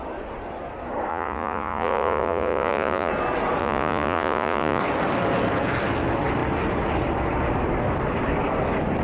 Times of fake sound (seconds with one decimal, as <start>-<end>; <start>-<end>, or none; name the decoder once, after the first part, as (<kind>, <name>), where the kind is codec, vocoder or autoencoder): 1.1-3.1 (vocoder, Vocos); 3.6-4.8